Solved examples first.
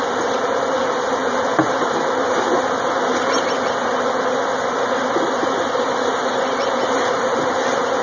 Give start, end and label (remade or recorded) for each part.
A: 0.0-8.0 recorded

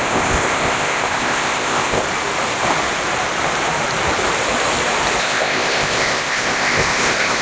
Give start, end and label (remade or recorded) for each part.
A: 0.0-2.0 remade; 2.0-5.2 recorded; 5.2-7.4 remade

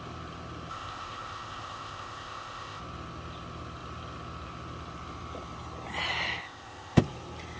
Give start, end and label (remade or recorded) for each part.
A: 0.0-0.7 recorded; 0.7-2.8 remade; 2.8-6.4 recorded; 6.4-7.0 remade; 7.0-7.6 recorded